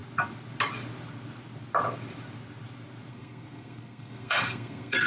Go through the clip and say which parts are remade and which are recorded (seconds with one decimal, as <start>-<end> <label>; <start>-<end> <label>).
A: 0.0-3.1 recorded; 3.1-5.1 remade